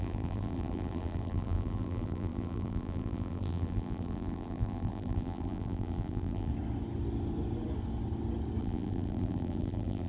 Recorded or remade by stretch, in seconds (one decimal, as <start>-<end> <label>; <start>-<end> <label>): 0.0-6.5 remade; 6.5-8.6 recorded; 8.6-10.1 remade